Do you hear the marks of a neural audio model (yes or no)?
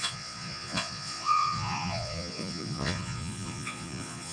yes